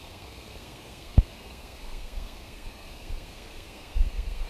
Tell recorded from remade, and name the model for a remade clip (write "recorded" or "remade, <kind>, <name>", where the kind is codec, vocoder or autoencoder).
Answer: remade, codec, SNAC